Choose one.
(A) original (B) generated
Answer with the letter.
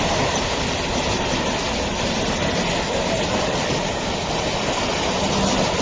A